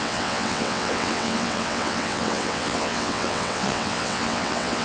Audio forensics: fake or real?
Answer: fake